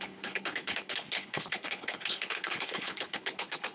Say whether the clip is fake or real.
fake